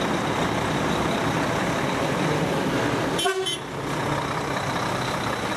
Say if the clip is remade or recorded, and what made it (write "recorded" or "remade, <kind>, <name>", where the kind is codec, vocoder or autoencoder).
remade, vocoder, BigVGAN v2